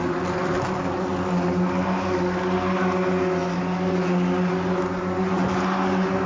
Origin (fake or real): real